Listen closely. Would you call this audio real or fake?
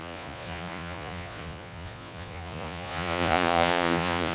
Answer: fake